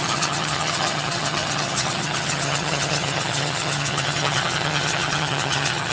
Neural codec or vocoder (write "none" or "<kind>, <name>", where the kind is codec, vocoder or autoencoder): vocoder, HiFi-GAN